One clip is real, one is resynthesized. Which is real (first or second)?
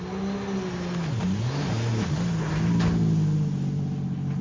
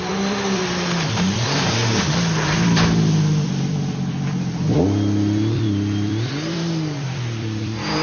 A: first